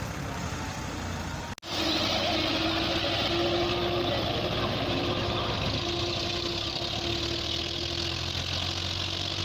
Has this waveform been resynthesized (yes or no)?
no